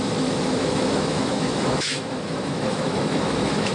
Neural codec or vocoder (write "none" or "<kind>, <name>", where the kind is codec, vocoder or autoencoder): autoencoder, DAC-VAE